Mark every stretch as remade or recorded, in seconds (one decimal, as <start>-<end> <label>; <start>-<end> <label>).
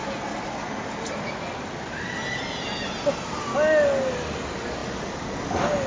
0.0-5.9 recorded